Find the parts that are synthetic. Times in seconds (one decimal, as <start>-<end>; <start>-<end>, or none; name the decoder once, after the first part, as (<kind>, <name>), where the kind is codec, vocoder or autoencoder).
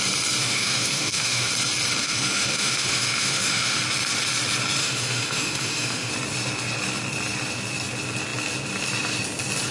0.4-1.5 (autoencoder, DAC-VAE); 2.0-3.8; 4.8-6.1